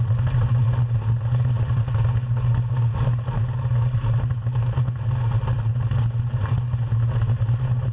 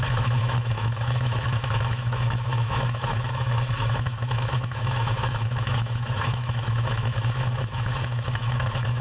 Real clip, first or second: first